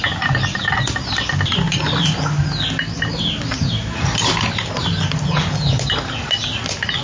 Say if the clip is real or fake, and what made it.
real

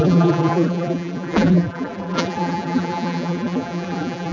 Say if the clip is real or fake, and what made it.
fake, vocoder, BigVGAN v2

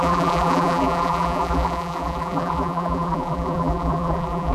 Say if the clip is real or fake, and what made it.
fake, vocoder, BigVGAN v2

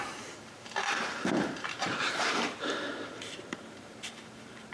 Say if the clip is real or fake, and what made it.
fake, vocoder, BigVGAN v2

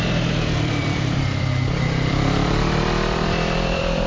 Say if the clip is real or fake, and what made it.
fake, vocoder, BigVGAN v2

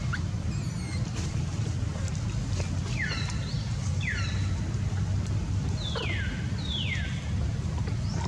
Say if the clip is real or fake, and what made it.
fake, vocoder, BigVGAN v2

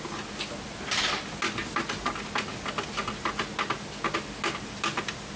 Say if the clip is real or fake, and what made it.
real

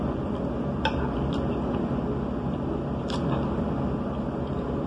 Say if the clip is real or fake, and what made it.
real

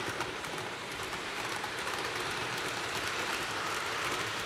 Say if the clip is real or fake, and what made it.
fake, vocoder, BigVGAN v2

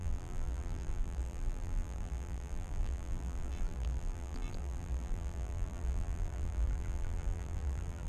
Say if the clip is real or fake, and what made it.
fake, vocoder, BigVGAN v2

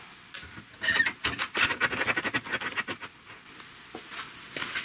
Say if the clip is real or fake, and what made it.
real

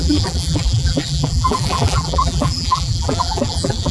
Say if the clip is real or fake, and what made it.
fake, vocoder, BigVGAN v2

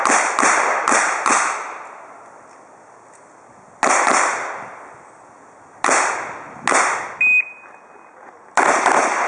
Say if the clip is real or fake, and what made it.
real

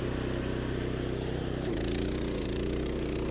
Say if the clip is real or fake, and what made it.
fake, vocoder, BigVGAN v2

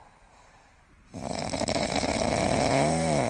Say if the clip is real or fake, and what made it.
fake, vocoder, BigVGAN v2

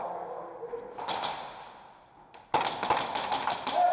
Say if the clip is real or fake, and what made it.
real